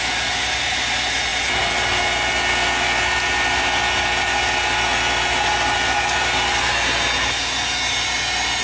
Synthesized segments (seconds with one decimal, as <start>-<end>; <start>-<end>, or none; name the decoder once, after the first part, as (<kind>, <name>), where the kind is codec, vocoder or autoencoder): none